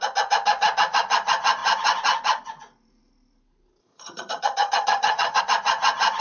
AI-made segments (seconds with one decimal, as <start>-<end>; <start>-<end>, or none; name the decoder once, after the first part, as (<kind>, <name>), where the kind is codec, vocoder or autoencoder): 3.8-5.4 (vocoder, HiFi-GAN)